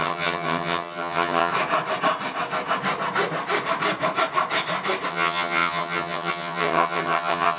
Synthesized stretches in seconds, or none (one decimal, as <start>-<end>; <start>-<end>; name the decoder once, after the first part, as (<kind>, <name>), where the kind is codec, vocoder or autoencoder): 0.0-1.5 (vocoder, HiFi-GAN); 5.1-7.6